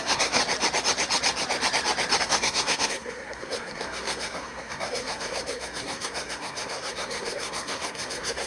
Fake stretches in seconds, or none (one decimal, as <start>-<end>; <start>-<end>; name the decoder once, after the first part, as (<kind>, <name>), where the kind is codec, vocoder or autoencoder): 0.0-0.4 (codec, SNAC); 2.2-8.5